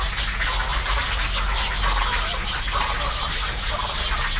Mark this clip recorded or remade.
recorded